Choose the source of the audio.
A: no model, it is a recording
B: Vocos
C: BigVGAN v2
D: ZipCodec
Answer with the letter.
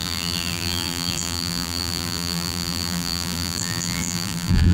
C